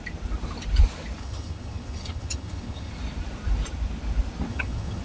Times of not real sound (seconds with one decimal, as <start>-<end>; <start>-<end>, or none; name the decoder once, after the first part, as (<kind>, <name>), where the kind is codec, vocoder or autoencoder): 1.2-2.9 (vocoder, HiFi-GAN); 4.5-5.0

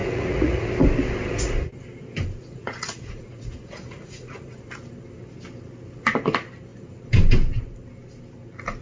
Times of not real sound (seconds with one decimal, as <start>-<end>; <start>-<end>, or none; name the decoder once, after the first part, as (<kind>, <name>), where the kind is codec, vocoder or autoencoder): 0.0-0.7 (vocoder, Vocos); 2.4-4.6

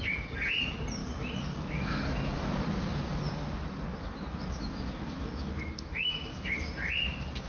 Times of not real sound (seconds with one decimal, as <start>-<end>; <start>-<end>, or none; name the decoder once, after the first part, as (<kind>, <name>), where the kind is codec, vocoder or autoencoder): 1.0-2.5 (autoencoder, DAC-VAE); 4.0-6.7

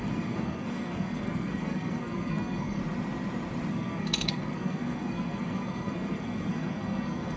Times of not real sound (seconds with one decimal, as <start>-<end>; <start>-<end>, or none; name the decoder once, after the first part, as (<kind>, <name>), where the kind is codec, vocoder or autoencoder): 0.0-2.8 (codec, SNAC); 3.7-7.4

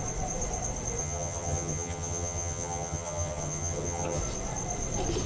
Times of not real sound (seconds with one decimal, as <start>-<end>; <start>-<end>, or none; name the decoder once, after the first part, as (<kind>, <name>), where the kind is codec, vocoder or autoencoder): 1.0-4.2 (vocoder, HiFi-GAN)